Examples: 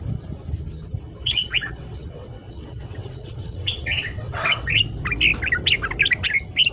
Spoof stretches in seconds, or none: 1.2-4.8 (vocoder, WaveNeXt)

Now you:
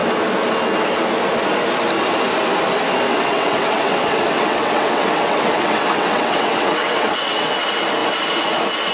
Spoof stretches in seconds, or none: 3.1-7.5 (vocoder, WaveNeXt)